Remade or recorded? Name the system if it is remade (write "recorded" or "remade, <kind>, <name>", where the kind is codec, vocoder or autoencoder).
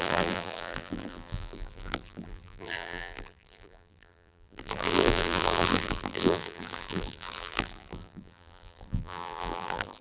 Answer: remade, vocoder, BigVGAN v2